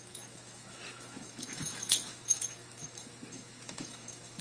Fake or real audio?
fake